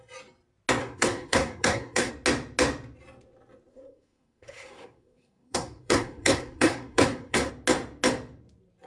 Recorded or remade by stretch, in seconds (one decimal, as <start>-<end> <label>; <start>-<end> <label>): 0.0-0.8 recorded; 0.8-2.1 remade; 2.1-3.7 recorded; 3.7-7.5 remade; 7.5-8.9 recorded

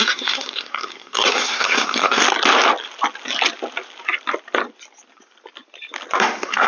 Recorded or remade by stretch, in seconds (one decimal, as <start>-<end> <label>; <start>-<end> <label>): 0.0-2.2 remade; 2.2-6.2 recorded; 6.2-6.7 remade

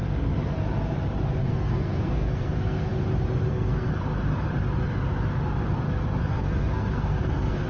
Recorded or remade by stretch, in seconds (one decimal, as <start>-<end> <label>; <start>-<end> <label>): 0.0-1.4 recorded; 1.4-2.9 remade; 2.9-3.5 recorded; 3.5-3.9 remade; 3.9-6.2 recorded; 6.2-7.7 remade

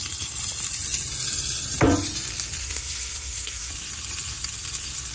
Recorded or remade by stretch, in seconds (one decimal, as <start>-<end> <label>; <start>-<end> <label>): 0.0-2.6 recorded; 2.6-3.7 remade; 3.7-5.1 recorded